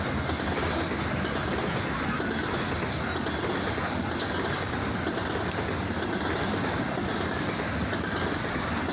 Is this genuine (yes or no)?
yes